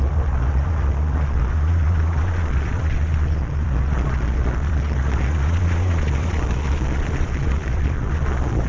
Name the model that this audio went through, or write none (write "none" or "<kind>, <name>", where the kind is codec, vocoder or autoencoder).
vocoder, Vocos